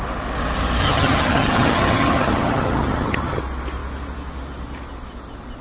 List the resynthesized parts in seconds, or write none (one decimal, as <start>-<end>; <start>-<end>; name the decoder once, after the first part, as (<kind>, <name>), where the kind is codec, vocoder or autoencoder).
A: 0.8-3.4 (vocoder, HiFi-GAN)